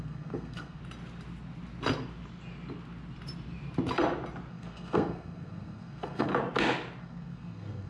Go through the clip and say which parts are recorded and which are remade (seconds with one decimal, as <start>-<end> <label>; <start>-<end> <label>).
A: 0.0-0.8 remade; 0.8-4.5 recorded; 4.5-6.3 remade; 6.3-7.0 recorded; 7.0-7.9 remade